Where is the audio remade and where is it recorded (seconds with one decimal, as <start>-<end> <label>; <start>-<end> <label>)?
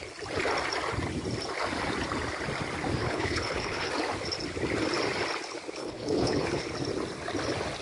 0.0-3.0 recorded; 3.0-3.9 remade; 3.9-5.8 recorded; 5.8-6.6 remade; 6.6-7.8 recorded